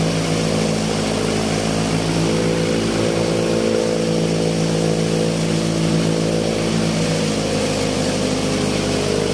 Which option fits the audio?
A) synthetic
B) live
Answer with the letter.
B